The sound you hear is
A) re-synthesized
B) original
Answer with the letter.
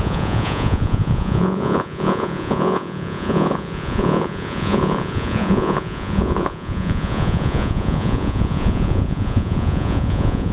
A